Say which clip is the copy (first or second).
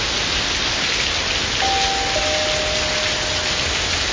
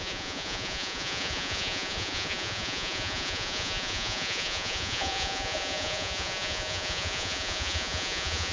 second